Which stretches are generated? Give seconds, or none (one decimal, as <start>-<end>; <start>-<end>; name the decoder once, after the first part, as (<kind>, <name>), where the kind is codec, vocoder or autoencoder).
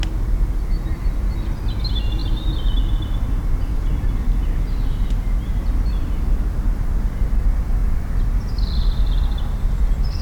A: none